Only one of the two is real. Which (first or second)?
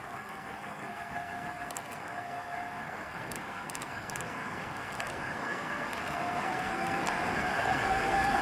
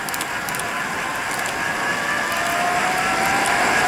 second